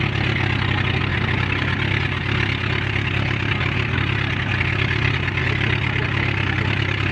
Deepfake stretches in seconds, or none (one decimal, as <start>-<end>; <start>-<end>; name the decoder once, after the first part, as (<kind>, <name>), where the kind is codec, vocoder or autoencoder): none